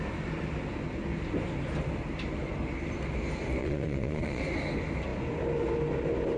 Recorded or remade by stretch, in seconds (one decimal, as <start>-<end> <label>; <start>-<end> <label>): 0.0-3.6 recorded; 3.6-4.4 remade; 4.4-6.4 recorded